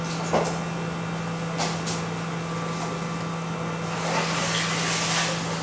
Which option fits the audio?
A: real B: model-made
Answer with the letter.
A